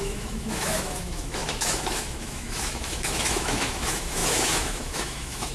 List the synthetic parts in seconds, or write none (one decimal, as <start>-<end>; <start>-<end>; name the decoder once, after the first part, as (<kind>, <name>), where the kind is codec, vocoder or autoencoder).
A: 0.0-5.5 (autoencoder, DAC-VAE)

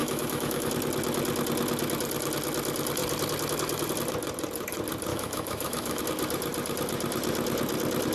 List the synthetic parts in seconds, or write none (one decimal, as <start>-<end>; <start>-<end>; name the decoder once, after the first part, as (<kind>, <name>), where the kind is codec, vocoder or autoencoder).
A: 0.0-0.7 (autoencoder, DAC-VAE); 5.1-6.0